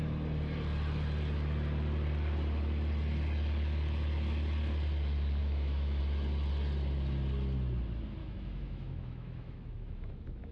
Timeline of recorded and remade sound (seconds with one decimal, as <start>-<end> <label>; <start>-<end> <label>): 0.0-5.4 recorded; 5.4-6.0 remade; 6.0-8.2 recorded; 8.2-10.5 remade